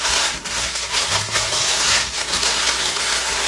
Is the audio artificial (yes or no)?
yes